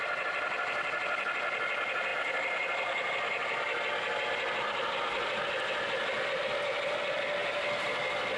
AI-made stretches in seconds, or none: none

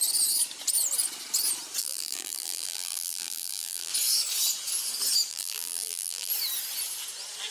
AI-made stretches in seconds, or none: 1.8-3.9 (vocoder, BigVGAN v2); 5.3-6.3

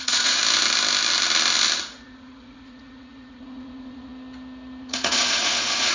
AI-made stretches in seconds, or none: 0.0-0.4 (vocoder, Vocos); 1.8-4.1; 4.8-5.9

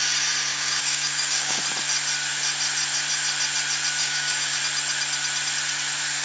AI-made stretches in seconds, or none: 0.5-1.6 (codec, DAC); 4.0-4.6